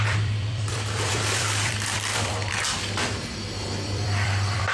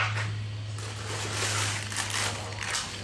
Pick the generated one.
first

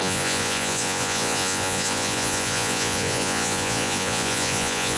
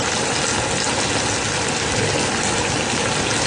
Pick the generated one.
first